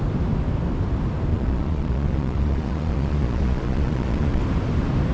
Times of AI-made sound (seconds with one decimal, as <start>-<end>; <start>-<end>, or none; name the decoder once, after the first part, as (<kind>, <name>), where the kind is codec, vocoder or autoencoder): 1.3-4.4 (vocoder, Vocos)